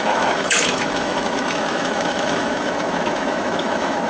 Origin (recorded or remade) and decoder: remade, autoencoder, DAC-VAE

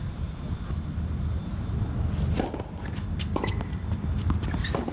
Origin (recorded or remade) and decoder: recorded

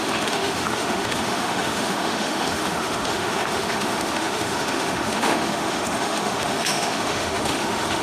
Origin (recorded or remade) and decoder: remade, autoencoder, DAC-VAE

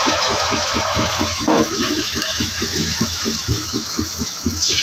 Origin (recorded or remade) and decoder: remade, autoencoder, DAC-VAE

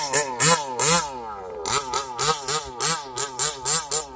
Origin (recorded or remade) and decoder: recorded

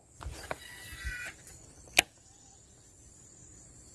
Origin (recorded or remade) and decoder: recorded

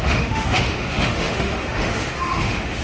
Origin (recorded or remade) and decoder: remade, autoencoder, DAC-VAE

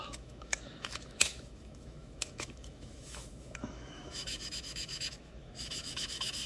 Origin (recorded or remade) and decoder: remade, autoencoder, DAC-VAE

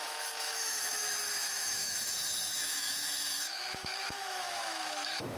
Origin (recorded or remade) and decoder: remade, autoencoder, DAC-VAE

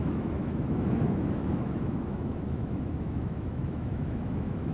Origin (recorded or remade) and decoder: remade, autoencoder, DAC-VAE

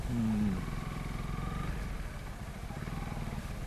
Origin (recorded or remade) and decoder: recorded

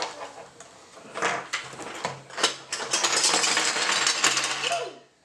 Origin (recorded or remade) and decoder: recorded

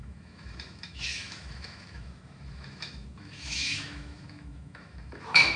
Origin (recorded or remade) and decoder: remade, autoencoder, DAC-VAE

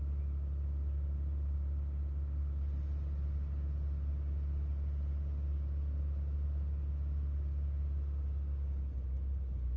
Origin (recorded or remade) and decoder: recorded